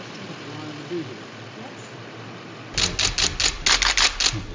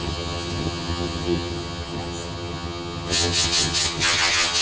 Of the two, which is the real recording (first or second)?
first